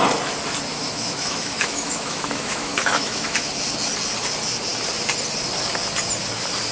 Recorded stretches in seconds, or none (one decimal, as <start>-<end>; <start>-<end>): 0.0-0.7; 3.5-6.7